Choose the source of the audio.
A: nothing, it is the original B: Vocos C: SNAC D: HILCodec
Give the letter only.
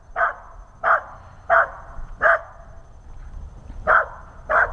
A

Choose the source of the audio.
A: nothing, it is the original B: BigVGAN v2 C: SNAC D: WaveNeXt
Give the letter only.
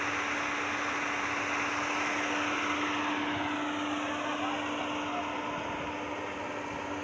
A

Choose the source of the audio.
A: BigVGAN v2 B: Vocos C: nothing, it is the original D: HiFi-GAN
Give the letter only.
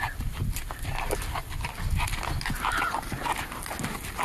C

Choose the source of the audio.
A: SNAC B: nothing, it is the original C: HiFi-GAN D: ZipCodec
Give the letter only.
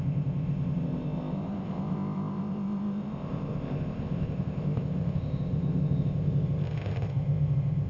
D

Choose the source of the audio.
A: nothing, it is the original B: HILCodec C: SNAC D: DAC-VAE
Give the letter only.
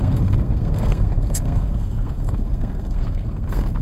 C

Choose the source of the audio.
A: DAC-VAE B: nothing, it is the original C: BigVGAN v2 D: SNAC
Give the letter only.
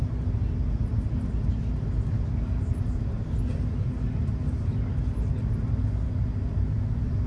B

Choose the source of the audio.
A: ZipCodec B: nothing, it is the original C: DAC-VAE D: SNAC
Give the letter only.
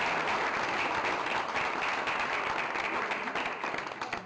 B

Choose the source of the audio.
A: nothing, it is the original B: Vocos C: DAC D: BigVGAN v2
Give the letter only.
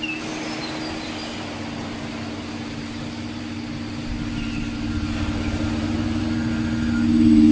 A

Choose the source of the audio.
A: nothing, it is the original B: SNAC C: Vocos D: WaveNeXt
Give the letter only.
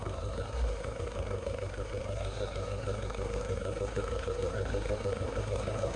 B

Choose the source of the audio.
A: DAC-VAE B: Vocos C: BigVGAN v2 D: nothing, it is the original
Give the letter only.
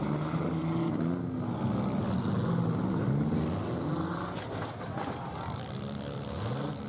D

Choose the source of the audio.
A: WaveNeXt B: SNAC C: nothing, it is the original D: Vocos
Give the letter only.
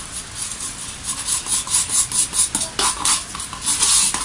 C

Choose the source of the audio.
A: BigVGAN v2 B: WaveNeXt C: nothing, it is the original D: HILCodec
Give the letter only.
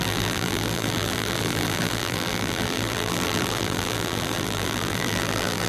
A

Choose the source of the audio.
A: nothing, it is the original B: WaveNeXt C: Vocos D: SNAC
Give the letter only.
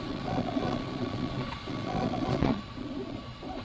C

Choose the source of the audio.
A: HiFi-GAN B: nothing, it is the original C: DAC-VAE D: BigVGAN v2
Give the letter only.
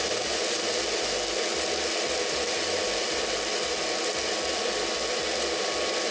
B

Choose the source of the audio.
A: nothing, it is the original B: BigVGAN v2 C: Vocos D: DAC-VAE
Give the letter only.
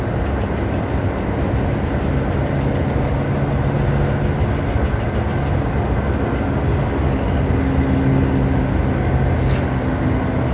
A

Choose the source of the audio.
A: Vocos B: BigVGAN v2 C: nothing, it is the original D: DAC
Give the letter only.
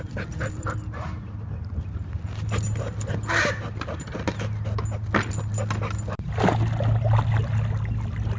C